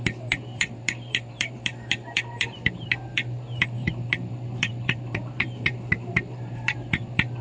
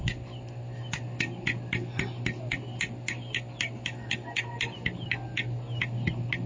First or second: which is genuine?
second